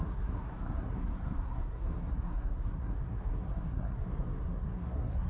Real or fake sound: fake